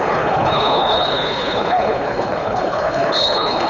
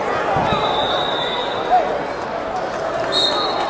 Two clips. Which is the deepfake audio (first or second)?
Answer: first